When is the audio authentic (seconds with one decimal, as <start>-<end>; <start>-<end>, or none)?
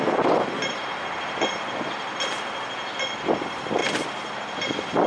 0.0-5.1